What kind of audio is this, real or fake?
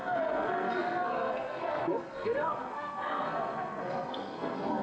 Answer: fake